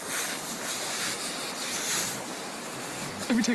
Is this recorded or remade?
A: recorded